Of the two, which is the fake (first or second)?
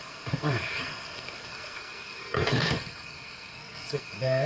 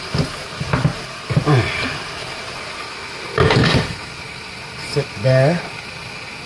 first